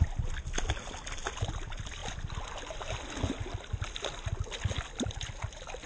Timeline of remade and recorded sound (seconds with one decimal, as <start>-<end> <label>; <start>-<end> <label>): 0.0-5.9 recorded